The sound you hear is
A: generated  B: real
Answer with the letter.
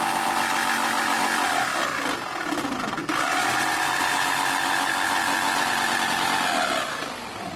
B